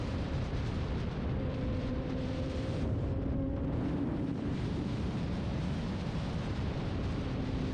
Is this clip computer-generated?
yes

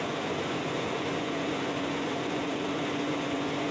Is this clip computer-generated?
yes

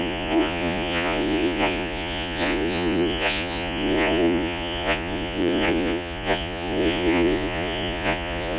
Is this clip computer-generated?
yes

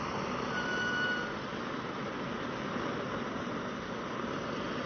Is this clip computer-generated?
no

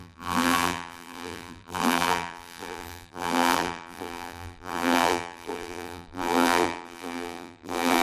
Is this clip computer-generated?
yes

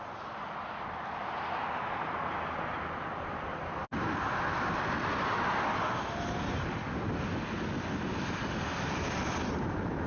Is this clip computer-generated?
no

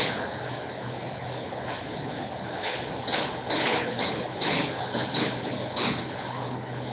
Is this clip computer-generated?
yes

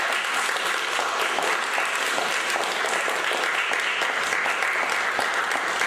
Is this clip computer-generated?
no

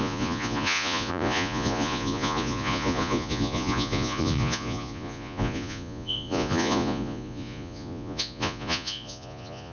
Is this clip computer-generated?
yes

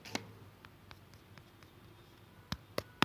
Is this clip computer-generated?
no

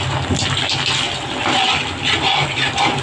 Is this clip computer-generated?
no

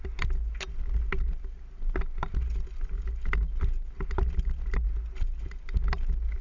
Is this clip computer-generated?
no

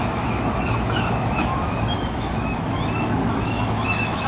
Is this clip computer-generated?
yes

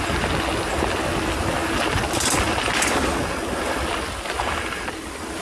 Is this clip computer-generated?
no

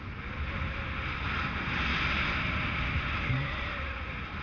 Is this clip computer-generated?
no